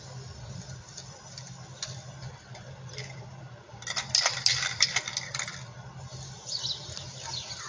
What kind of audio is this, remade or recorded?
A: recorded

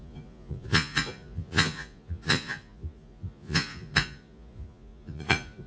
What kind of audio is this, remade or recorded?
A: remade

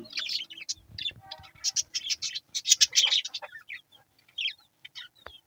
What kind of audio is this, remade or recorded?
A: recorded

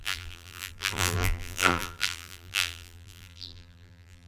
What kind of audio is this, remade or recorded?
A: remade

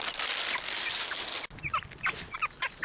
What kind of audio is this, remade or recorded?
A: recorded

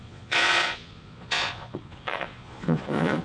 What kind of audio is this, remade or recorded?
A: remade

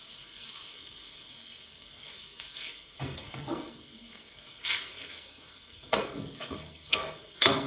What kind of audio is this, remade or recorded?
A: remade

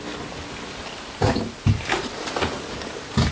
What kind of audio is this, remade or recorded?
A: recorded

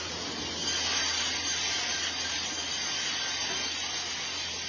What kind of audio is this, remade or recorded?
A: recorded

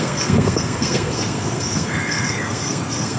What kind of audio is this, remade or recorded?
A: remade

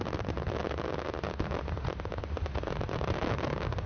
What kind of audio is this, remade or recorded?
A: recorded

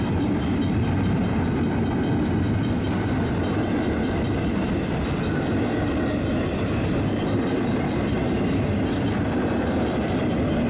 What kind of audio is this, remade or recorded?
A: recorded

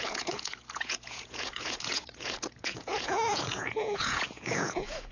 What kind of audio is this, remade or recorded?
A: remade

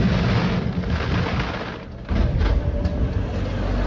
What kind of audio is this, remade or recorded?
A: recorded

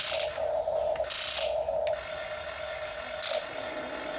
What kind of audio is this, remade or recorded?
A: recorded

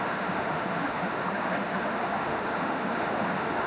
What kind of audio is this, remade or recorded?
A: remade